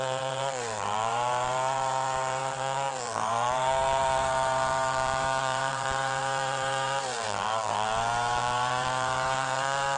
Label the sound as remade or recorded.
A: remade